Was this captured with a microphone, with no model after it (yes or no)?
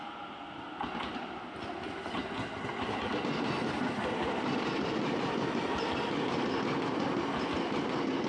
yes